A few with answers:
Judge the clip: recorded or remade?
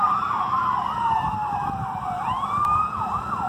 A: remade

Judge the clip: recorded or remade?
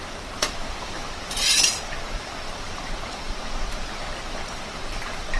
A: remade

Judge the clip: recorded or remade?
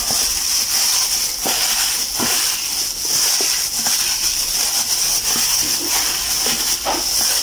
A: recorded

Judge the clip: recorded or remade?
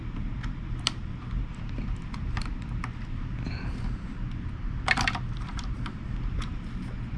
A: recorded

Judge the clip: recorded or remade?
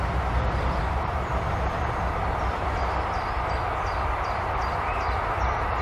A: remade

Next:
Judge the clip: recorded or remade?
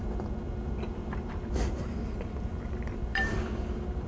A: remade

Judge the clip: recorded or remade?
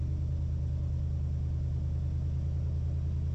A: recorded